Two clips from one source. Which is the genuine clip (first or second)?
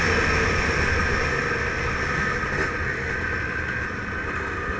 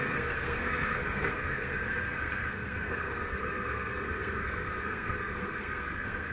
first